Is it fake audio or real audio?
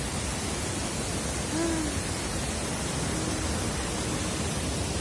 real